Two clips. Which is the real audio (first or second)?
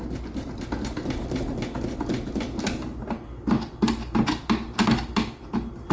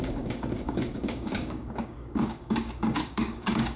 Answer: first